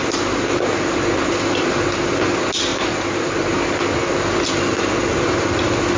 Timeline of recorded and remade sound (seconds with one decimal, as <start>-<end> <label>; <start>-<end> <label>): 0.0-6.0 recorded